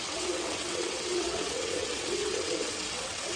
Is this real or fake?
fake